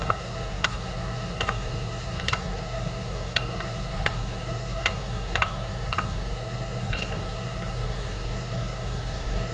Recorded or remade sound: remade